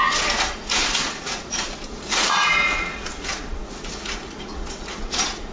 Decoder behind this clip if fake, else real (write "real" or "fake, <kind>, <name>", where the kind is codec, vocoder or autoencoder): fake, vocoder, Vocos